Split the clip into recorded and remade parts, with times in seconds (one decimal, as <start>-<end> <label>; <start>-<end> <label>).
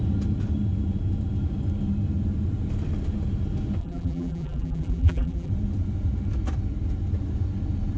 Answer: 0.0-3.8 recorded; 3.8-5.5 remade; 5.5-8.0 recorded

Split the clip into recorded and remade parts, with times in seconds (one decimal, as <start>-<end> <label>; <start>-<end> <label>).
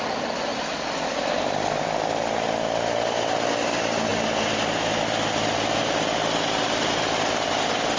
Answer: 0.0-0.5 recorded; 0.5-3.3 remade; 3.3-8.0 recorded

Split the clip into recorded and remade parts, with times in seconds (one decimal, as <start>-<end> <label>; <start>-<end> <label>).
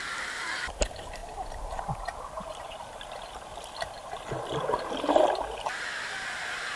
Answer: 0.0-3.5 remade; 3.5-6.8 recorded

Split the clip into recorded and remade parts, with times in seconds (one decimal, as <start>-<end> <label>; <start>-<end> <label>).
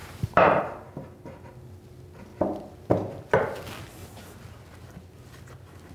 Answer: 0.0-0.6 remade; 0.6-4.0 recorded; 4.0-4.6 remade; 4.6-5.9 recorded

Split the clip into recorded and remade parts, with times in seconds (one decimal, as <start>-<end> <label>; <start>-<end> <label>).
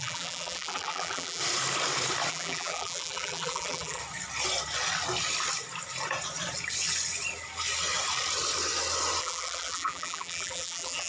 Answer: 0.0-1.4 remade; 1.4-2.3 recorded; 2.3-4.0 remade; 4.0-9.2 recorded; 9.2-11.1 remade